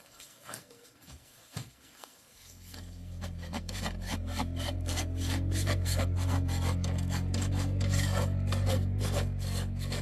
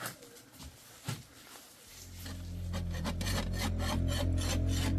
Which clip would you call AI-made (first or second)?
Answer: first